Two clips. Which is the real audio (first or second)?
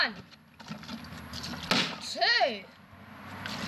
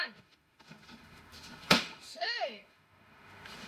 first